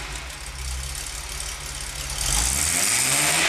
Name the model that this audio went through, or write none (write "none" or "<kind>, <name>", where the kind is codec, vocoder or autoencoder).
none